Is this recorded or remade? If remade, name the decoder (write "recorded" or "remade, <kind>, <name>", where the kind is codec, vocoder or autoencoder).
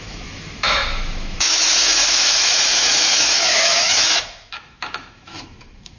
remade, autoencoder, DAC-VAE